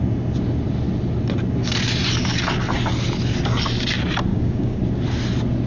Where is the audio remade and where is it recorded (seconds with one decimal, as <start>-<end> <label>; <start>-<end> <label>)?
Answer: 0.0-4.3 recorded; 4.3-4.8 remade; 4.8-5.7 recorded